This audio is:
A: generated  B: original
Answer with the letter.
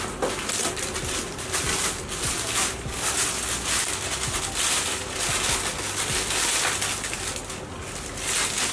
B